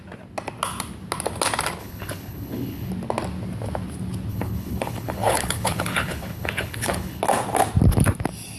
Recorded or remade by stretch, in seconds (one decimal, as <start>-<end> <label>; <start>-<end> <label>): 0.0-1.8 recorded; 1.8-2.9 remade; 2.9-4.3 recorded; 4.3-7.2 remade; 7.2-8.6 recorded